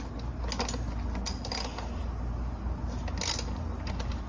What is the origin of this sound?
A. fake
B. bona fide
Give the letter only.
B